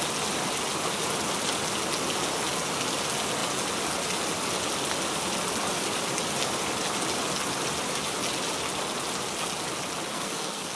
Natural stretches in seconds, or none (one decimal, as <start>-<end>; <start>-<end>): 0.0-10.1